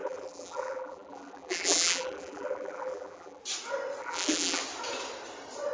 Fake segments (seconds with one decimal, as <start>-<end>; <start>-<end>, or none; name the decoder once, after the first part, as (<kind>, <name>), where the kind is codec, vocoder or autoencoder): 0.0-3.4 (vocoder, BigVGAN v2); 4.0-4.6